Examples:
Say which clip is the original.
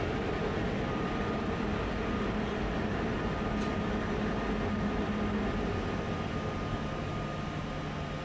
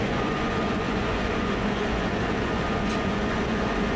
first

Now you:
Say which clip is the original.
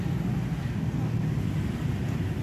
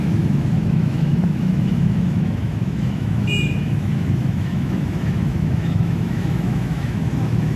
first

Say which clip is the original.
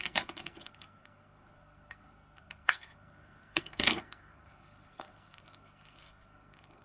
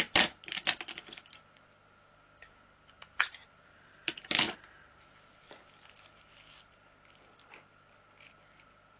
second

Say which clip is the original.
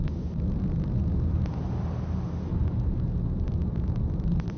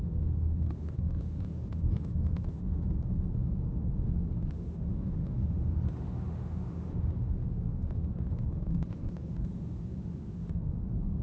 first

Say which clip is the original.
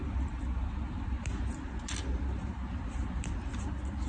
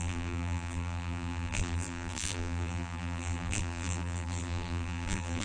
first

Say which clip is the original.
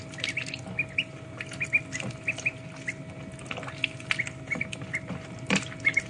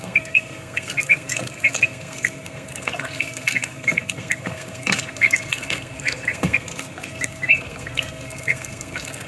first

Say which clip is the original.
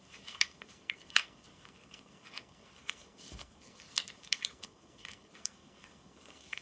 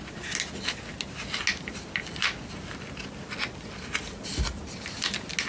second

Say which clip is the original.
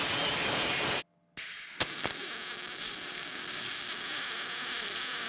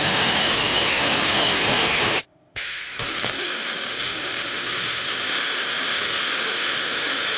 first